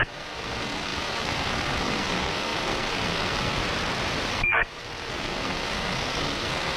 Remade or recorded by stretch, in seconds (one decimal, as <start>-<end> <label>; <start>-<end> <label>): 0.0-3.6 remade; 3.6-4.3 recorded; 4.3-6.8 remade